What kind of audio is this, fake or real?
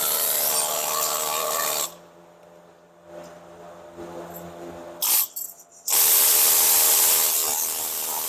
real